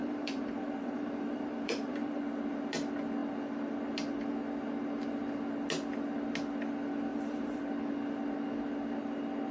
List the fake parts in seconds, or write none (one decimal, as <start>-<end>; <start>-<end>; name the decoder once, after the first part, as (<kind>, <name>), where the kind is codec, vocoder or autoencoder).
0.0-2.2 (vocoder, BigVGAN v2); 7.1-7.6